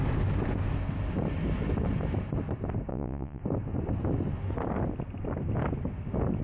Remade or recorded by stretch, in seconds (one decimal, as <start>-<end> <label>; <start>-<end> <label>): 0.0-2.9 recorded; 2.9-3.4 remade; 3.4-6.4 recorded